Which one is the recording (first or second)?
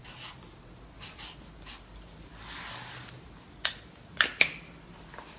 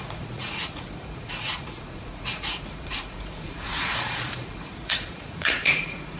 first